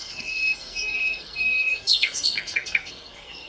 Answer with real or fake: fake